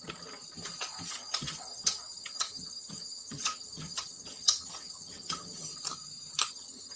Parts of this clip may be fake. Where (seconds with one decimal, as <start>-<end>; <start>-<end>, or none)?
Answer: 0.0-0.4; 1.1-5.7; 6.5-7.0